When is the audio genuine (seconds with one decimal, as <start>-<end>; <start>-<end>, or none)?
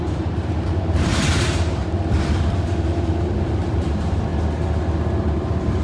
1.8-3.4; 4.3-5.2